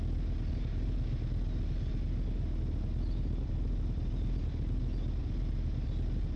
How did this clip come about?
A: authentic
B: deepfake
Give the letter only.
A